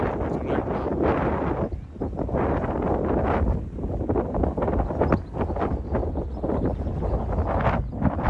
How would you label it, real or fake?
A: real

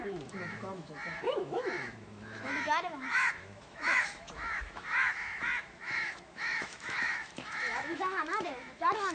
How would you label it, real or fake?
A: fake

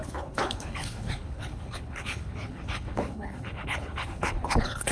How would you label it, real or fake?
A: fake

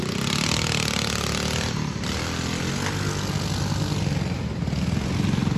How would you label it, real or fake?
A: real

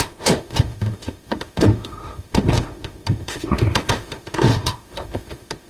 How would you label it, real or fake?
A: fake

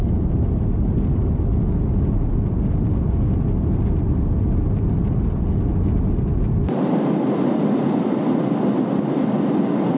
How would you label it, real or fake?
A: real